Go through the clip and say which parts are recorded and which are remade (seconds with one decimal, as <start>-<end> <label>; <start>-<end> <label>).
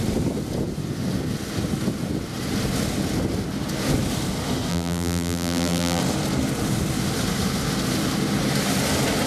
0.0-4.7 recorded; 4.7-6.0 remade; 6.0-9.3 recorded